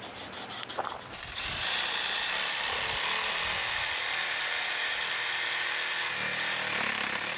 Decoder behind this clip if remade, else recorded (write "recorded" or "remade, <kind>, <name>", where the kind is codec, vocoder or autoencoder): recorded